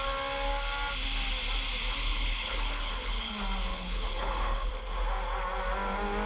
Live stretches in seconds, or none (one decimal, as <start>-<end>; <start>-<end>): 0.0-2.0; 3.3-3.7; 4.7-6.3